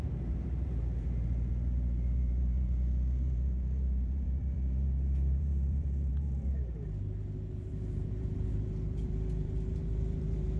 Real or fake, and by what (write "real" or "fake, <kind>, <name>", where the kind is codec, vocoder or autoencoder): fake, vocoder, BigVGAN v2